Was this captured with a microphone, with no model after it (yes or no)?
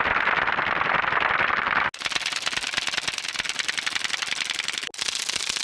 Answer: yes